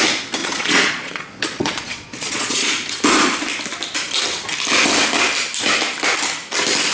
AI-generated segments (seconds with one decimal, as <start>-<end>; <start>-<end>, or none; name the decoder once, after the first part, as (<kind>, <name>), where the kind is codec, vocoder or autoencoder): 0.4-2.7 (vocoder, Vocos)